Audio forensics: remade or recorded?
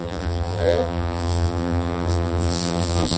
remade